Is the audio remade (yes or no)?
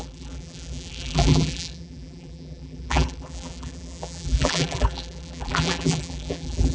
yes